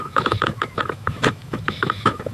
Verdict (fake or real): fake